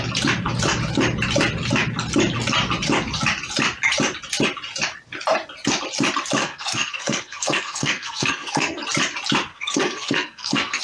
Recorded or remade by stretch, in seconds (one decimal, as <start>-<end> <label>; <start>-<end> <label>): 0.0-6.4 recorded; 6.4-8.8 remade; 8.8-9.5 recorded; 9.5-10.8 remade